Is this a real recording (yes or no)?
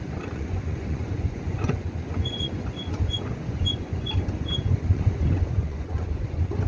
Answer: no